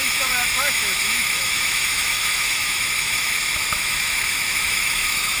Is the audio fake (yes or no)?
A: yes